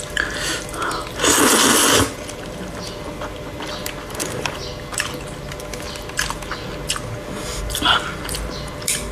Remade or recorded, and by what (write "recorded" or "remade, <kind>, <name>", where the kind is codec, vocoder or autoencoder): recorded